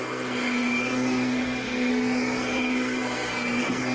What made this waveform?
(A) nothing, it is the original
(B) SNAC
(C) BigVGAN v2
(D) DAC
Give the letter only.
B